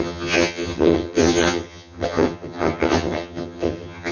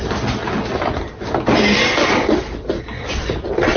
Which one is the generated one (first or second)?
first